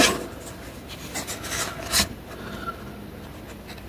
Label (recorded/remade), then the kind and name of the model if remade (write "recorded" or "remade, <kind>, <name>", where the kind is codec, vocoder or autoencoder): recorded